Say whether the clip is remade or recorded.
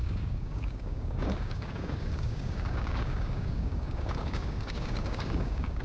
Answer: remade